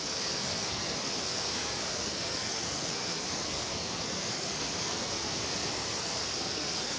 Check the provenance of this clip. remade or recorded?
remade